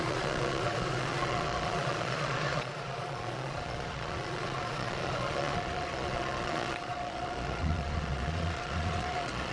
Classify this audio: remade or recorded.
remade